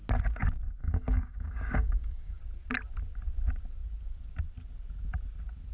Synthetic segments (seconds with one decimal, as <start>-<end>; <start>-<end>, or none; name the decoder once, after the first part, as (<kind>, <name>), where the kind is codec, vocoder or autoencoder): 0.8-2.4 (codec, DAC)